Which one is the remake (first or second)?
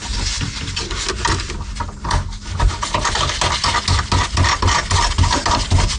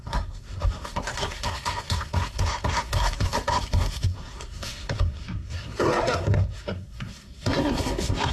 second